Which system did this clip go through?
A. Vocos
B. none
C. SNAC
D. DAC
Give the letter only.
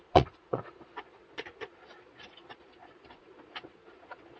A